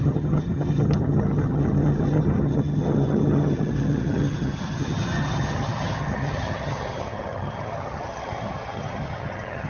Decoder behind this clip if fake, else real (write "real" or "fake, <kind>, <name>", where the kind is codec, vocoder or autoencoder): fake, vocoder, HiFi-GAN